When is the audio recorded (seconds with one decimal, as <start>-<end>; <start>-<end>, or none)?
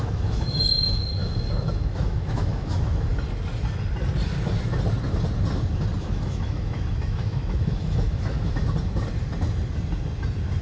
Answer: 3.1-6.0; 8.6-10.6